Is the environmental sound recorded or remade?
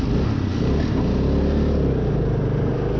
recorded